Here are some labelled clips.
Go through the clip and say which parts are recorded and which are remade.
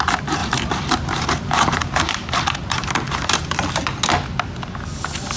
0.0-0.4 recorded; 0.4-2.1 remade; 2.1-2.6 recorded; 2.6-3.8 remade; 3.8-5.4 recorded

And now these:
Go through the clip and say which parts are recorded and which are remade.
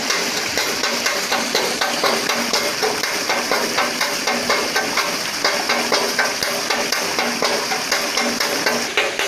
0.0-4.8 remade; 4.8-9.3 recorded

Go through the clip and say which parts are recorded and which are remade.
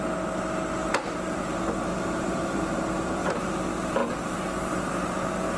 0.0-0.8 recorded; 0.8-1.4 remade; 1.4-1.9 recorded; 1.9-3.4 remade; 3.4-4.0 recorded; 4.0-4.9 remade; 4.9-5.6 recorded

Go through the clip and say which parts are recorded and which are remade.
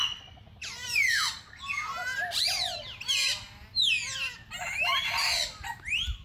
0.0-1.4 remade; 1.4-6.2 recorded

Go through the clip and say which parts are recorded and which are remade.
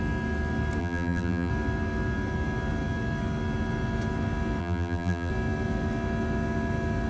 0.0-0.8 recorded; 0.8-1.5 remade; 1.5-4.6 recorded; 4.6-5.3 remade; 5.3-7.1 recorded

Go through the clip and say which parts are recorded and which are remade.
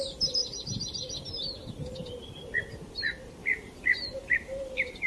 0.0-0.4 recorded; 0.4-1.1 remade; 1.1-3.4 recorded; 3.4-5.1 remade